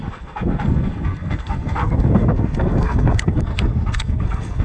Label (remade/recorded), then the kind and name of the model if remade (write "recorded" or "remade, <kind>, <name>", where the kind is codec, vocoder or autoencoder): remade, codec, SNAC